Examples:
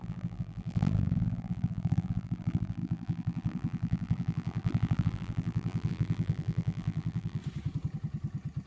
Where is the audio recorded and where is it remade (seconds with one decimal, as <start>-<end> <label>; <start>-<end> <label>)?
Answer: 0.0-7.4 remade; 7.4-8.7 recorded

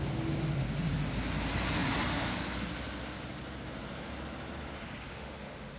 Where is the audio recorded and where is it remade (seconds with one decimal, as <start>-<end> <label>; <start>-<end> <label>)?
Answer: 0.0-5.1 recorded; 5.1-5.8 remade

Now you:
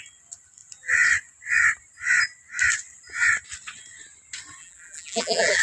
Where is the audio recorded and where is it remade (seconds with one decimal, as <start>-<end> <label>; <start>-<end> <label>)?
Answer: 0.0-4.6 recorded; 4.6-5.6 remade